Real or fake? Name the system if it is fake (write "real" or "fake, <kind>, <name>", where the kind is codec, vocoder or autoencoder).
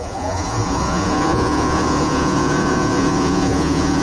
fake, vocoder, Vocos